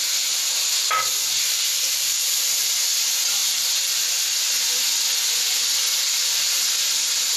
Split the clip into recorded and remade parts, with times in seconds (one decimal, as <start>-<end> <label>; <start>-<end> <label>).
0.0-1.3 recorded; 1.3-2.6 remade; 2.6-3.4 recorded; 3.4-4.1 remade; 4.1-5.9 recorded; 5.9-6.6 remade; 6.6-7.4 recorded